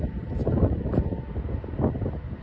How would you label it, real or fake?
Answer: real